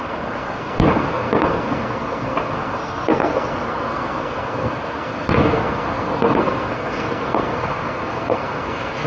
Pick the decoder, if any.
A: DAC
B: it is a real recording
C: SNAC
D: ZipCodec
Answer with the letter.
C